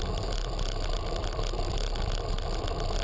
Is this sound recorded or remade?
recorded